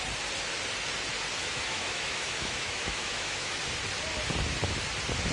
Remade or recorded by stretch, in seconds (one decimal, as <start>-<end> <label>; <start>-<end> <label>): 0.0-1.4 recorded; 1.4-3.6 remade; 3.6-5.3 recorded